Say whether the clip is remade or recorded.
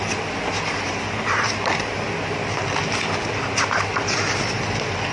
recorded